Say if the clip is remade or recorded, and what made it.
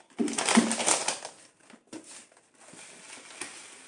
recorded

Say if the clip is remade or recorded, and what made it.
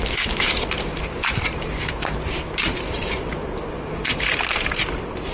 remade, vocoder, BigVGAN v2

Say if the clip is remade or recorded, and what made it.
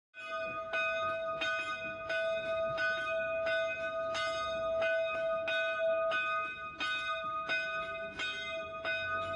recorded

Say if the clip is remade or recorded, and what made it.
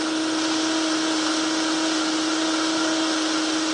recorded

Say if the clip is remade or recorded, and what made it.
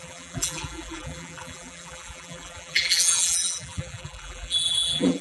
remade, vocoder, BigVGAN v2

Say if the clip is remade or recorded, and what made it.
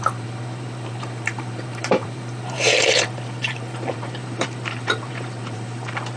remade, vocoder, BigVGAN v2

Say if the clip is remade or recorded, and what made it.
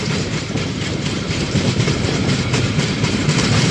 remade, vocoder, BigVGAN v2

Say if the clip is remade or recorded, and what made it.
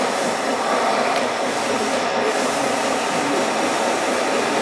remade, vocoder, BigVGAN v2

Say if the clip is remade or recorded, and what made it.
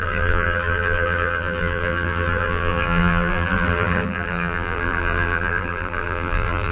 remade, vocoder, BigVGAN v2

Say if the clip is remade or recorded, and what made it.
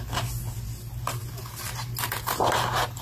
recorded